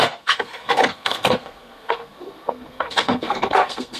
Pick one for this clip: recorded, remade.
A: remade